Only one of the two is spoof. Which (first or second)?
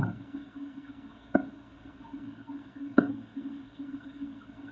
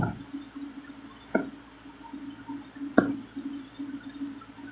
first